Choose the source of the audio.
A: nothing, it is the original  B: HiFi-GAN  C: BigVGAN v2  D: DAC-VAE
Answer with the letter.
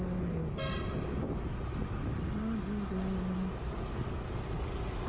A